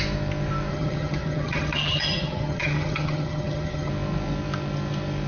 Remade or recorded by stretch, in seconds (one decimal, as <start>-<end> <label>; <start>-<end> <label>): 0.0-0.7 recorded; 0.7-3.9 remade; 3.9-5.3 recorded